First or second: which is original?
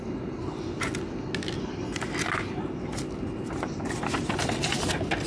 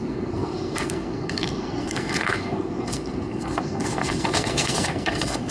first